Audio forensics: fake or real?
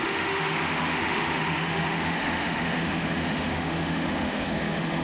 fake